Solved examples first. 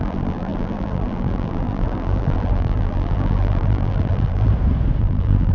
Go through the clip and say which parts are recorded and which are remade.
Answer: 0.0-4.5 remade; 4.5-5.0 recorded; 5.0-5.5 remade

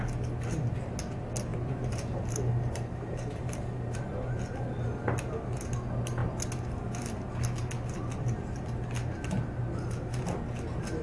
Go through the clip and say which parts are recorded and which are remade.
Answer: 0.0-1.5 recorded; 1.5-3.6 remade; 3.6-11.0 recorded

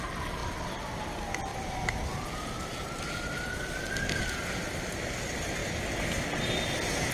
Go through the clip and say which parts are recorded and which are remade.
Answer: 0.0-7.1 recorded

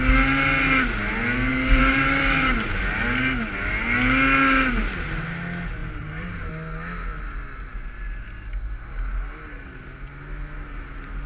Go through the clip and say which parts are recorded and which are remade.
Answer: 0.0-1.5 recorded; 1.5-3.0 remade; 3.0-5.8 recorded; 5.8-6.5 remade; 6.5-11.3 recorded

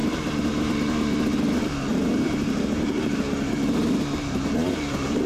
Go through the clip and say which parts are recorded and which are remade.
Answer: 0.0-0.5 remade; 0.5-1.9 recorded; 1.9-5.3 remade